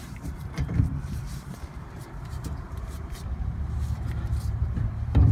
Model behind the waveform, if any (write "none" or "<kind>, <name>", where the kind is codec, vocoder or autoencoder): vocoder, BigVGAN v2